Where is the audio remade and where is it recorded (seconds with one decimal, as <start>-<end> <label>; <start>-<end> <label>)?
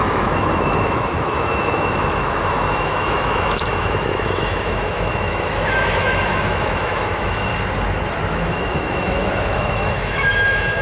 0.0-7.5 remade; 7.5-8.3 recorded; 8.3-10.8 remade